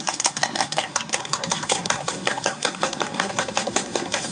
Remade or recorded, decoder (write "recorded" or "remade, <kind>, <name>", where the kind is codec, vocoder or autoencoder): remade, codec, SNAC